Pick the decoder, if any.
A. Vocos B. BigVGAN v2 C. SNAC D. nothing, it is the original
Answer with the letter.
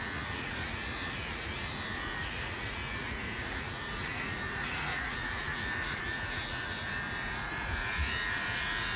A